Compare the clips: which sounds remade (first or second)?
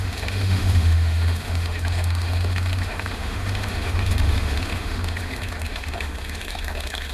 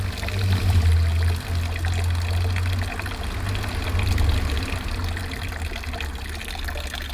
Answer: first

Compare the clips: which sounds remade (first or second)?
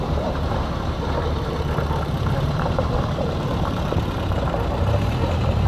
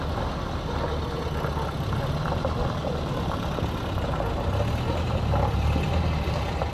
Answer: first